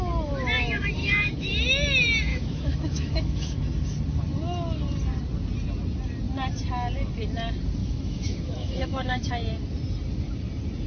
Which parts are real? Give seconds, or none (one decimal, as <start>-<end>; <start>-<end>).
0.0-1.0; 1.5-2.3; 3.6-7.8; 9.3-10.9